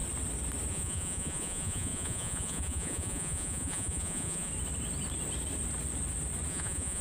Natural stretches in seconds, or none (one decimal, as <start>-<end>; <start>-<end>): 0.0-0.7; 4.5-6.5